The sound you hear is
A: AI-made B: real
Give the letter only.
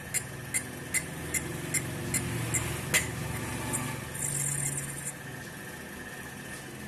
B